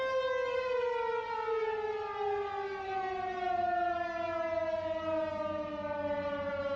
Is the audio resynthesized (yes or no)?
no